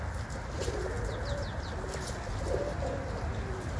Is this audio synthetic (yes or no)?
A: no